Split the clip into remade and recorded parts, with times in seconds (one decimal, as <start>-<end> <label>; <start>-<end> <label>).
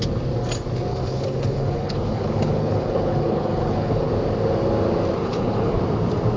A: 0.0-0.9 recorded; 0.9-4.1 remade; 4.1-5.2 recorded; 5.2-5.8 remade; 5.8-6.4 recorded